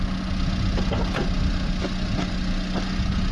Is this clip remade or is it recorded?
recorded